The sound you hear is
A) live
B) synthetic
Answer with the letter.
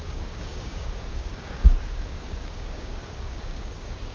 B